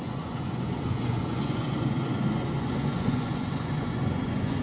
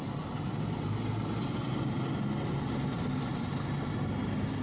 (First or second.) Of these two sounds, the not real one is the first